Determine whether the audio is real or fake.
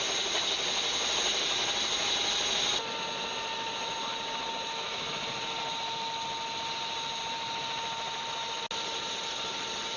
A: real